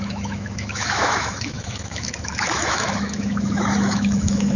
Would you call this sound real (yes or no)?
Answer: no